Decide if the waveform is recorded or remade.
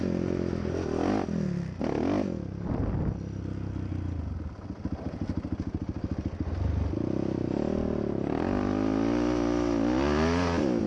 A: recorded